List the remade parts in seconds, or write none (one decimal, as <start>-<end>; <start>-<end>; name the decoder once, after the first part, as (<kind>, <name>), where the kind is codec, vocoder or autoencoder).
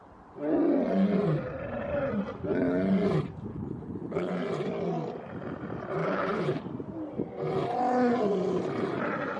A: 3.5-4.3 (codec, HILCodec); 6.0-6.6